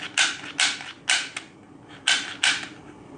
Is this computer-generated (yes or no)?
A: no